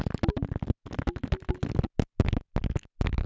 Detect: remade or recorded recorded